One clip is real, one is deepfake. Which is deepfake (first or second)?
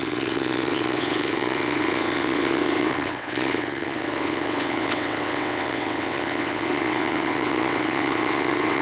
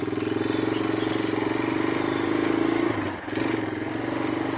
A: first